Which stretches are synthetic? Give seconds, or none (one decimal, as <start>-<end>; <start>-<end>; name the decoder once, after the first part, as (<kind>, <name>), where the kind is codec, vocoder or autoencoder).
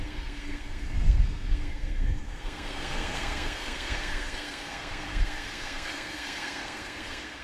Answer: 0.0-7.4 (codec, SNAC)